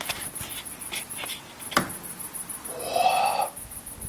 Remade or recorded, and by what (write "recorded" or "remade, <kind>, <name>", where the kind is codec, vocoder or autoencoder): recorded